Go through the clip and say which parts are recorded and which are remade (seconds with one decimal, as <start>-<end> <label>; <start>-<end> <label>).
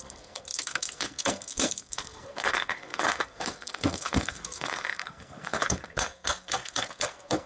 0.0-7.5 remade